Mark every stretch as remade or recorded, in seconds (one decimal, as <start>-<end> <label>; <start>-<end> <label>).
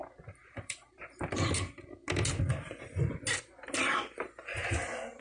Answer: 0.0-0.4 recorded; 0.4-1.5 remade; 1.5-5.2 recorded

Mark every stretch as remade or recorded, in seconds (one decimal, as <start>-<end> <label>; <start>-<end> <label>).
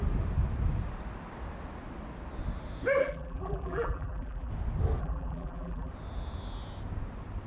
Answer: 0.0-3.0 recorded; 3.0-4.5 remade; 4.5-5.0 recorded; 5.0-5.9 remade; 5.9-7.5 recorded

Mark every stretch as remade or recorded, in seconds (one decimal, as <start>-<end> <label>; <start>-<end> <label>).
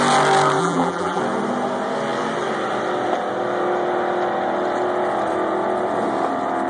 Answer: 0.0-0.6 recorded; 0.6-1.2 remade; 1.2-6.7 recorded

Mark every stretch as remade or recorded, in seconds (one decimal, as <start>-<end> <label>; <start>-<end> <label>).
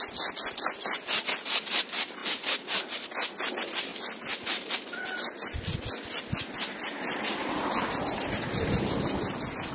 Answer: 0.0-9.7 recorded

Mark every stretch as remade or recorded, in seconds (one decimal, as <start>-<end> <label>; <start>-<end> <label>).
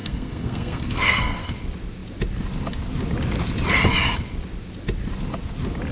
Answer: 0.0-1.5 remade; 1.5-5.9 recorded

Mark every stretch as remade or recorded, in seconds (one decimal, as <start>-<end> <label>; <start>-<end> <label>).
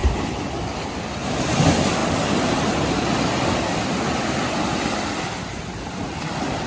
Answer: 0.0-1.5 remade; 1.5-6.7 recorded